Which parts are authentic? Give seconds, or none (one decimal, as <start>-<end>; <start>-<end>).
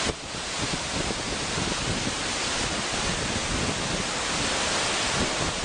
0.0-5.6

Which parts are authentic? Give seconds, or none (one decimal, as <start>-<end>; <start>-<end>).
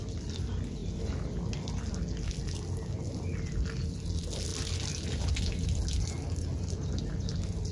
0.0-7.7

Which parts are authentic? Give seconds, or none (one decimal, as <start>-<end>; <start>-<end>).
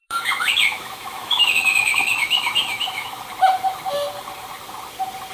3.2-5.3